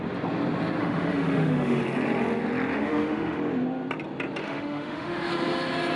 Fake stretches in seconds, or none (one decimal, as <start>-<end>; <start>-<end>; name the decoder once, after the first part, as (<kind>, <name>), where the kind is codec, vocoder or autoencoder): 0.8-1.8 (autoencoder, DAC-VAE); 2.7-3.4; 4.4-5.3